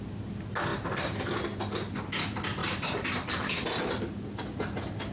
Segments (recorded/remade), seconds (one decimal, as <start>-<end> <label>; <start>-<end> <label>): 0.0-2.6 recorded; 2.6-4.1 remade; 4.1-5.1 recorded